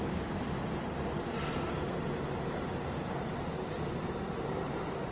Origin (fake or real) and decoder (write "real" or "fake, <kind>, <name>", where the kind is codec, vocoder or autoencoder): real